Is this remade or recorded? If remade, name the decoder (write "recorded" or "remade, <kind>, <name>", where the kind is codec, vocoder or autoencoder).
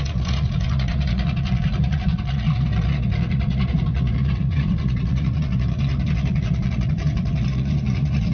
remade, vocoder, Vocos